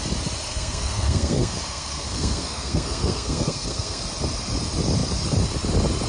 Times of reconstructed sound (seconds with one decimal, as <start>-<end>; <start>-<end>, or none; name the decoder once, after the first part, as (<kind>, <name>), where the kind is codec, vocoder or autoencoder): 0.5-4.0 (codec, SNAC)